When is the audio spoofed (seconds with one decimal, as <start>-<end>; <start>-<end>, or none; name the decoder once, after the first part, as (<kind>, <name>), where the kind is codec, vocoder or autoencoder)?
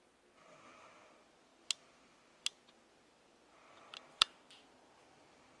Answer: none